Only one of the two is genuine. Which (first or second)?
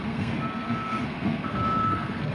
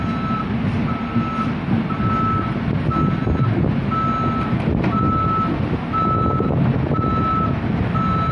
second